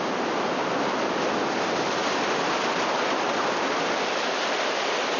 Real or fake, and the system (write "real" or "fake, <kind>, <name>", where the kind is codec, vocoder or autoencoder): real